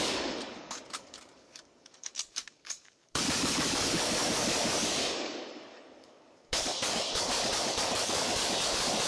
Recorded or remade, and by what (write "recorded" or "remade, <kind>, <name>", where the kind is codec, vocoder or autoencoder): remade, codec, DAC